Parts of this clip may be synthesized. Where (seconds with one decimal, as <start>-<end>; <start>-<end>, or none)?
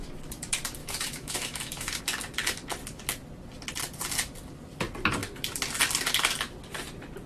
0.8-2.0